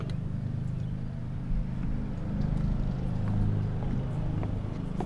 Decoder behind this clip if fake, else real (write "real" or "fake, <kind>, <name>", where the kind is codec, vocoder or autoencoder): real